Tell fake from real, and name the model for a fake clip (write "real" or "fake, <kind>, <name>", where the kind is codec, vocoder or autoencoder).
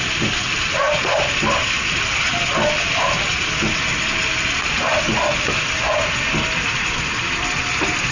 real